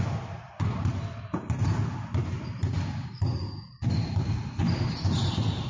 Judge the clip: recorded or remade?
recorded